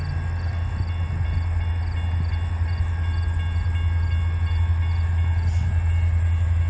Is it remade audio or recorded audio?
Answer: recorded